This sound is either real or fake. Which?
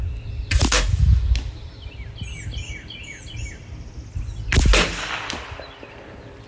real